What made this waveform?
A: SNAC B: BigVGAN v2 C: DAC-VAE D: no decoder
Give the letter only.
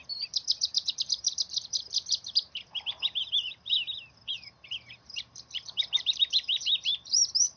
B